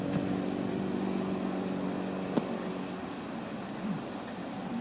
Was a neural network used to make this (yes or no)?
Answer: no